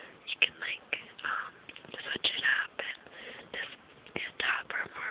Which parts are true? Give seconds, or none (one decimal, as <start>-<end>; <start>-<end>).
0.0-5.1

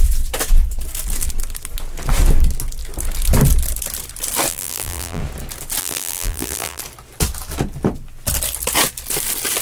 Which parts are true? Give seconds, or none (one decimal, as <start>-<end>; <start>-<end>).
0.0-4.5; 5.2-5.8; 6.8-9.6

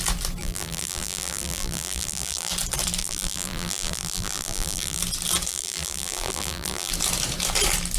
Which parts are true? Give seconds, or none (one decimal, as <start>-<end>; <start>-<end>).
0.0-0.4; 2.5-3.0; 5.0-5.5; 6.9-8.0

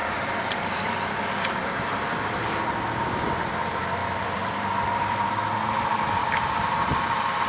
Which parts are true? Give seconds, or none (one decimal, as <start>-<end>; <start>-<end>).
2.6-4.0; 5.3-6.2; 6.9-7.5

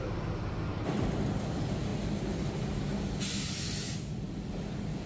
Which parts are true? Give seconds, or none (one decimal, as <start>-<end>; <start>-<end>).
0.0-5.1

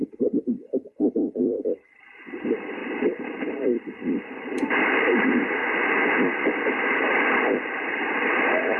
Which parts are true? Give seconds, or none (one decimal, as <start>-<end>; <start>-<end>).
5.6-6.6